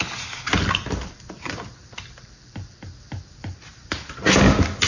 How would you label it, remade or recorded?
recorded